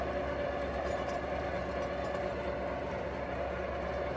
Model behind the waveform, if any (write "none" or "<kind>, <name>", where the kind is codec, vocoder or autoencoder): none